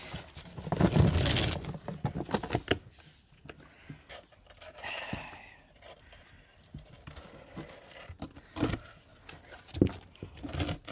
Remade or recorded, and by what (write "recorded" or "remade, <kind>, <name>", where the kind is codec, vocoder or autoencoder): recorded